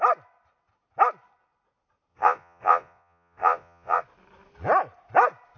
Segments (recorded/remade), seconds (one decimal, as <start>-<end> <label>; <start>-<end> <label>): 0.0-2.1 recorded; 2.1-4.0 remade; 4.0-5.6 recorded